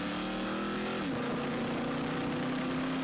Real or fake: real